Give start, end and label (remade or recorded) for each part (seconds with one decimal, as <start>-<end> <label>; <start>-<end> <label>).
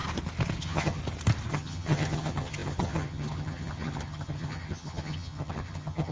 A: 0.0-0.6 recorded; 0.6-1.0 remade; 1.0-1.5 recorded; 1.5-6.1 remade